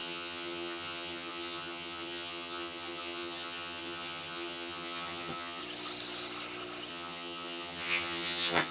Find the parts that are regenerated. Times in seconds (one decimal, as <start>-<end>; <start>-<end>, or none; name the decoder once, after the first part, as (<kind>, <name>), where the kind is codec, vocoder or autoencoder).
0.0-5.6 (vocoder, HiFi-GAN); 6.9-8.7